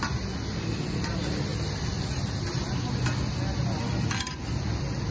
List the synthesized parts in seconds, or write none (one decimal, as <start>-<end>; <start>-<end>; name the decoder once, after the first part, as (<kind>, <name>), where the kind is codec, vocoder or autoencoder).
none